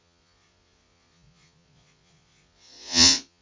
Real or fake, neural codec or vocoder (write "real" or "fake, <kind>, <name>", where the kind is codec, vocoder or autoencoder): fake, vocoder, Vocos